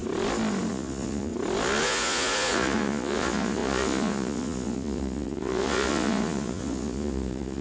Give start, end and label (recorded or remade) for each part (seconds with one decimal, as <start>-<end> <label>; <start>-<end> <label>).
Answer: 0.0-0.7 recorded; 0.7-1.3 remade; 1.3-1.8 recorded; 1.8-7.6 remade